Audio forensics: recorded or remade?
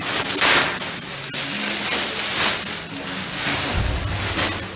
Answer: recorded